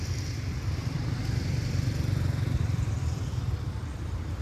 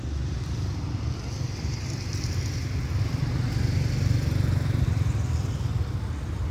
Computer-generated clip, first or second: first